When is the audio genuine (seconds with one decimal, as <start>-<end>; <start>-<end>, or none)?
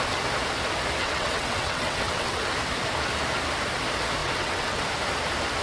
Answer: 0.0-1.0; 2.4-4.2; 4.8-5.6